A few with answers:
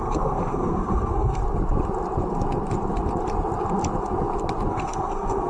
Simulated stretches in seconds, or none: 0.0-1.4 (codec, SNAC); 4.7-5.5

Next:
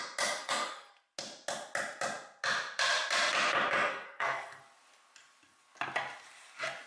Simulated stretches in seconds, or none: 0.4-0.9 (codec, SNAC); 3.9-4.6

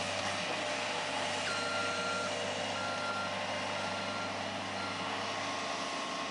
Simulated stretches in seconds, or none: none

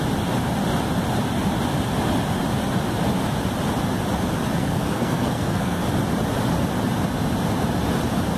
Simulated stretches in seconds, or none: 4.6-5.8 (codec, SNAC)